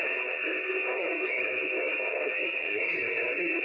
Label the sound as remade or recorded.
remade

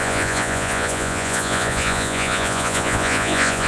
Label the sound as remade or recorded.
remade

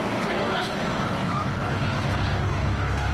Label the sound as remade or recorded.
remade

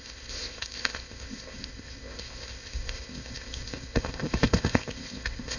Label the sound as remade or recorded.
remade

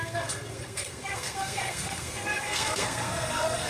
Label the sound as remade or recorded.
remade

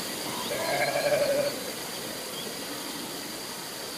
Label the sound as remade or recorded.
recorded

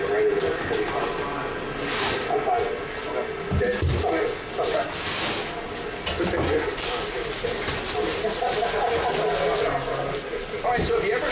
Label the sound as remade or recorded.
recorded